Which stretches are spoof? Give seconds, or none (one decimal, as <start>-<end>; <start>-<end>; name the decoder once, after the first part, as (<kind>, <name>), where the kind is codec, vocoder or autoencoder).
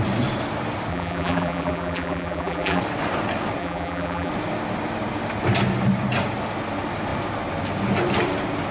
0.9-2.8 (vocoder, BigVGAN v2); 3.6-4.3